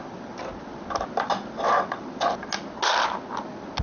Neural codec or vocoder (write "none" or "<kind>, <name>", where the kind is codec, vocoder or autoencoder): none